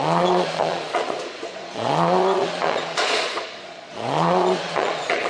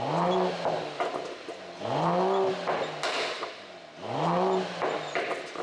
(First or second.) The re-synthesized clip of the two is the first